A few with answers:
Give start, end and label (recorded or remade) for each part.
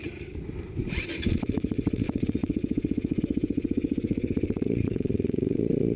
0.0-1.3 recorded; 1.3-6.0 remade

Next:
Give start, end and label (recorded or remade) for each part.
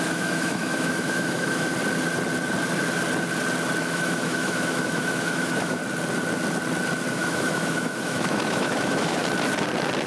0.0-1.7 remade; 1.7-3.8 recorded; 3.8-5.8 remade; 5.8-7.1 recorded; 7.1-9.2 remade; 9.2-10.1 recorded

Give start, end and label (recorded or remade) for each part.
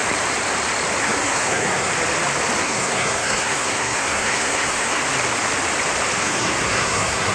0.0-1.0 recorded; 1.0-1.9 remade; 1.9-2.6 recorded; 2.6-5.0 remade; 5.0-6.2 recorded; 6.2-7.3 remade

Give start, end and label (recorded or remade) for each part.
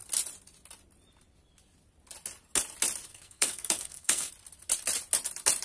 0.0-3.1 recorded; 3.1-4.3 remade; 4.3-5.6 recorded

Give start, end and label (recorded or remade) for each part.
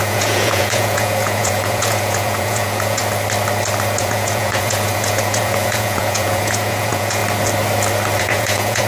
0.0-3.0 remade; 3.0-4.0 recorded; 4.0-7.2 remade; 7.2-8.2 recorded; 8.2-8.9 remade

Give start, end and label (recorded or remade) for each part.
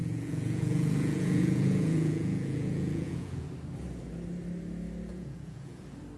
0.0-3.5 remade; 3.5-5.1 recorded; 5.1-5.8 remade; 5.8-6.2 recorded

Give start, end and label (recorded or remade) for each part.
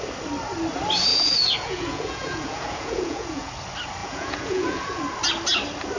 0.0-1.1 recorded; 1.1-3.5 remade; 3.5-4.0 recorded; 4.0-5.0 remade; 5.0-6.0 recorded